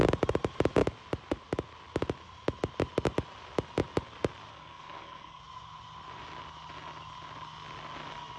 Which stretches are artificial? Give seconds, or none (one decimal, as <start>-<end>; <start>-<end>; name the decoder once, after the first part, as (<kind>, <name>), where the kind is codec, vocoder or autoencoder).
4.5-5.4 (codec, SNAC)